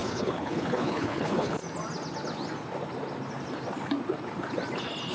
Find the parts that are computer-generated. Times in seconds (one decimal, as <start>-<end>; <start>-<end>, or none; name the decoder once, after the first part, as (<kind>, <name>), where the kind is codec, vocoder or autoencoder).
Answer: 0.0-1.6 (codec, HILCodec)